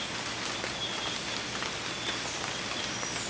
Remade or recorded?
recorded